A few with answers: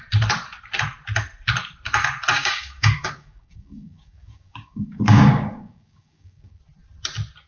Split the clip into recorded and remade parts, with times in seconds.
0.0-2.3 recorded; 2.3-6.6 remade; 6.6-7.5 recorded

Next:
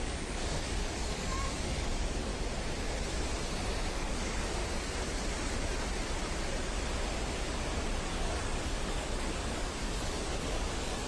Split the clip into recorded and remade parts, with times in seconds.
0.0-2.3 remade; 2.3-3.9 recorded; 3.9-4.6 remade; 4.6-8.0 recorded; 8.0-11.1 remade

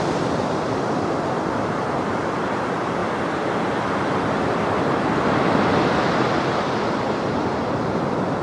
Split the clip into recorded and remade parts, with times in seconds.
0.0-8.4 remade

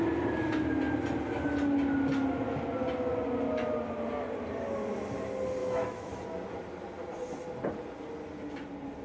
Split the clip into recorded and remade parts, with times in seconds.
0.0-5.6 recorded; 5.6-6.1 remade; 6.1-9.0 recorded

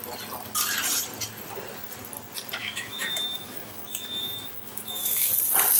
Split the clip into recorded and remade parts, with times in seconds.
0.0-2.6 recorded; 2.6-5.3 remade; 5.3-5.8 recorded